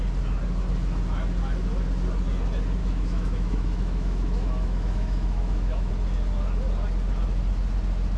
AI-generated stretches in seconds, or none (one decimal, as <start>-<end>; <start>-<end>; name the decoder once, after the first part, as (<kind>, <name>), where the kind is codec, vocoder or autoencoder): 2.8-5.9 (autoencoder, DAC-VAE)